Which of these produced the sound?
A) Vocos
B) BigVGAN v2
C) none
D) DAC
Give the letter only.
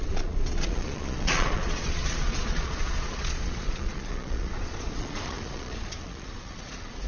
A